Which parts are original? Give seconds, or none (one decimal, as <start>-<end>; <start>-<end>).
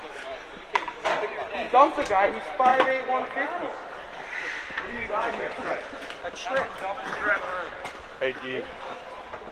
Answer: 1.1-8.1; 9.1-9.5